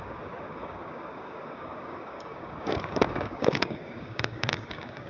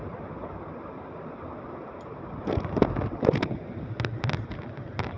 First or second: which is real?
second